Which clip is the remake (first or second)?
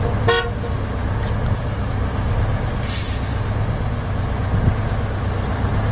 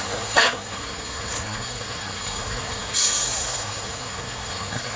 second